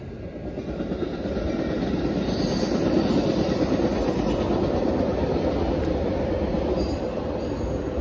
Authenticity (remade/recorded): recorded